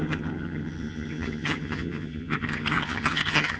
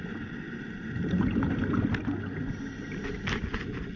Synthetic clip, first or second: first